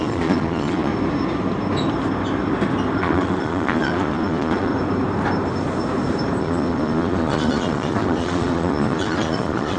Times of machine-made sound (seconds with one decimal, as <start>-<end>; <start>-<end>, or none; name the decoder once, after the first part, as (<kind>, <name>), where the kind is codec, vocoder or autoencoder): 0.0-0.9 (vocoder, Vocos); 3.0-4.7; 6.4-9.8